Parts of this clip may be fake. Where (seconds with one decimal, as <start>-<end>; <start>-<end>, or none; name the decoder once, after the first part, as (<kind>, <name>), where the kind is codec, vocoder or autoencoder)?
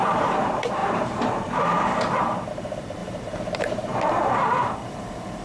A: 0.0-5.4 (vocoder, BigVGAN v2)